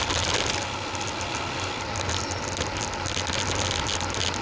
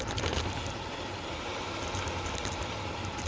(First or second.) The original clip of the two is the first